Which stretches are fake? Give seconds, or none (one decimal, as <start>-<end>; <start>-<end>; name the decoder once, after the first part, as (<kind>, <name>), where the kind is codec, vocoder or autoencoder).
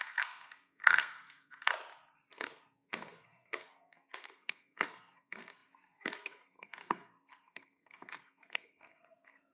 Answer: 0.0-1.7 (codec, SNAC); 2.3-9.5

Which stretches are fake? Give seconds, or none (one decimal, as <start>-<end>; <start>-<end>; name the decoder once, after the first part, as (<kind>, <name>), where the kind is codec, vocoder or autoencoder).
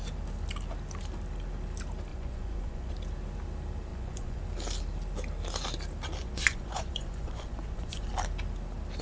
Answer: 2.1-2.9 (vocoder, Vocos); 3.9-4.4; 6.2-8.1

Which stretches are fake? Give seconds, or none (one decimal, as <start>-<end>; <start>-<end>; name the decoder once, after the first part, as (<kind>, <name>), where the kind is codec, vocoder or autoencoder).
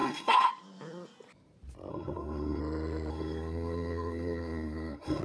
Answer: 0.0-0.5 (codec, SNAC); 1.9-2.6; 3.1-5.2